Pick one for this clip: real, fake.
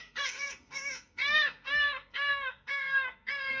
fake